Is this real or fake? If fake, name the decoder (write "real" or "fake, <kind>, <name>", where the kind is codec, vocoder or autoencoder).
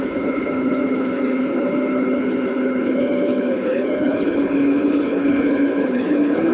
fake, codec, HILCodec